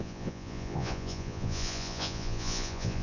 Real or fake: fake